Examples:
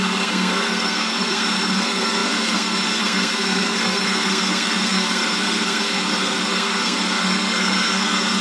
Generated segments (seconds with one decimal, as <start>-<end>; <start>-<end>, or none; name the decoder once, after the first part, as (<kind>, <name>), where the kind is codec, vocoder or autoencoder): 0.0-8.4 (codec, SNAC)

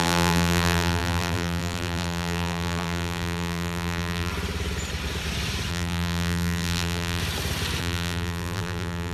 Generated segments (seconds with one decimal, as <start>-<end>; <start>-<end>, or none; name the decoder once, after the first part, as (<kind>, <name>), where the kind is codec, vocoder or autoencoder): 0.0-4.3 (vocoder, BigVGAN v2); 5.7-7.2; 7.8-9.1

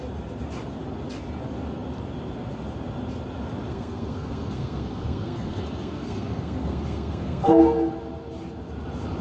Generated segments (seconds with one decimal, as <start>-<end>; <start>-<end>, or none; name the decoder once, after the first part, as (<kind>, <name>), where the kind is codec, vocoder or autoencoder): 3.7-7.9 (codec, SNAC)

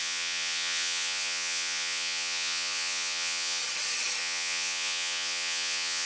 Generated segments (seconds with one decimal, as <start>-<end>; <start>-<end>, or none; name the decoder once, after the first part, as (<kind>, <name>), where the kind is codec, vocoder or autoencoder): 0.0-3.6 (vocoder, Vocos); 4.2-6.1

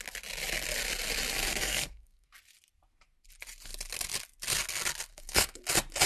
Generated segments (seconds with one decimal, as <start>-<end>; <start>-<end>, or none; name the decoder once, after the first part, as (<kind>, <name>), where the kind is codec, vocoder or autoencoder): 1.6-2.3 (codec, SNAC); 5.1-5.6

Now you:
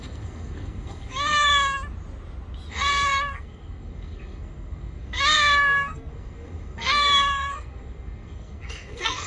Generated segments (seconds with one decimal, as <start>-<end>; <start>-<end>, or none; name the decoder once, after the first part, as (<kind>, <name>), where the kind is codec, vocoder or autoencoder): 0.0-1.5 (codec, SNAC); 2.7-9.3

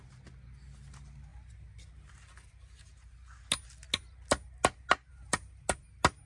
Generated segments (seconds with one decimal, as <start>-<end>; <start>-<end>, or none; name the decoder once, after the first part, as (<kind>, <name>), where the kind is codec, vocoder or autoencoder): none

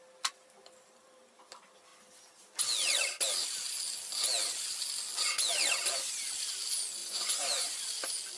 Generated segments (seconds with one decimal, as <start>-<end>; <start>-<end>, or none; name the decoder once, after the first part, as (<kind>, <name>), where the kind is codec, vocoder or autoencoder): 7.0-7.8 (vocoder, Vocos)